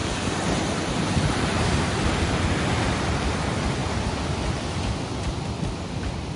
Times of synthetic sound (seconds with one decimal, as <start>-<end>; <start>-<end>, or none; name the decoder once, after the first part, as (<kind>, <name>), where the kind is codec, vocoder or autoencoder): 0.0-3.8 (vocoder, BigVGAN v2)